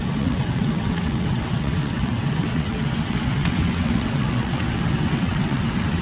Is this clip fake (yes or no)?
yes